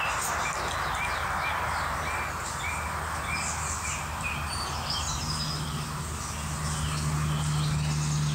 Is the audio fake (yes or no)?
no